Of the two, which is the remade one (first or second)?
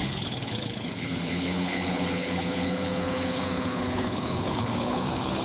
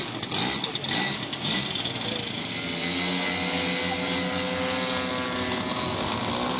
first